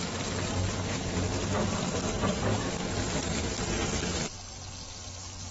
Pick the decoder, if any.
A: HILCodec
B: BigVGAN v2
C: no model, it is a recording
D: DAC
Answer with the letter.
C